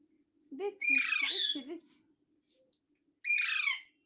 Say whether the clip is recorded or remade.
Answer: recorded